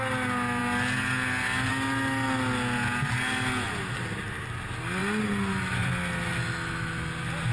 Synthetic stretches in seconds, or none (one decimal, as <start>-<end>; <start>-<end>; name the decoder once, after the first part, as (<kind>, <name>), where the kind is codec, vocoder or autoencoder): none